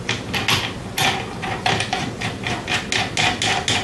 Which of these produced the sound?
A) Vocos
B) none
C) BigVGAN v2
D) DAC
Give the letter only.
B